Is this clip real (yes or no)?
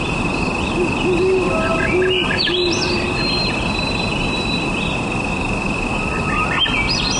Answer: yes